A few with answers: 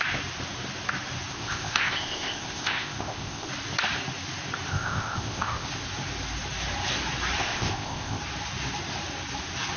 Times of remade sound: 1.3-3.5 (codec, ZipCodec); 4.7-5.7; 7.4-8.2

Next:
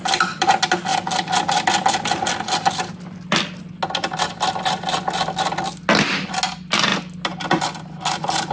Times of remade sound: none

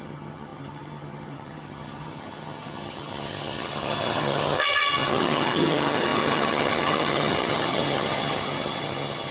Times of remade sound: 0.0-9.3 (vocoder, HiFi-GAN)